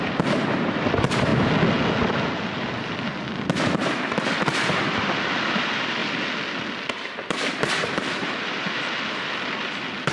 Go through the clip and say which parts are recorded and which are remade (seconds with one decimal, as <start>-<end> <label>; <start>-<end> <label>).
0.0-1.3 remade; 1.3-2.1 recorded; 2.1-3.1 remade; 3.1-4.1 recorded; 4.1-6.0 remade; 6.0-7.3 recorded; 7.3-8.2 remade; 8.2-9.6 recorded; 9.6-10.1 remade